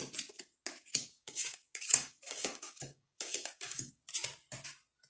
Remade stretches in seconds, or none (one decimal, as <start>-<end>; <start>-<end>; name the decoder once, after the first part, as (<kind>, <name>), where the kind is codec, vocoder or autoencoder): 0.9-4.0 (codec, DAC)